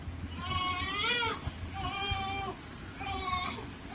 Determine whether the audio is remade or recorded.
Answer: recorded